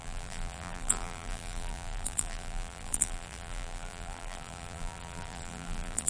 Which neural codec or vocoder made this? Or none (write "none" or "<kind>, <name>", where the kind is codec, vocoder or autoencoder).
vocoder, BigVGAN v2